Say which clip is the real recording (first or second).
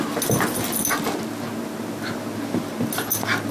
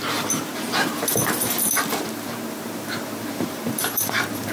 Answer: first